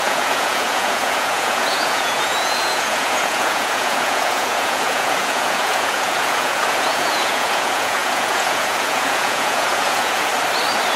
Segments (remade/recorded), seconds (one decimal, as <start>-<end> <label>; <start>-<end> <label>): 0.0-10.3 remade; 10.3-11.0 recorded